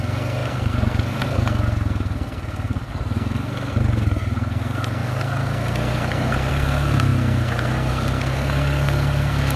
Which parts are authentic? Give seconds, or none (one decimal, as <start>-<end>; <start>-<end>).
none